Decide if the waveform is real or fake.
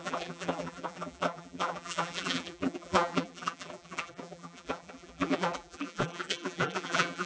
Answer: fake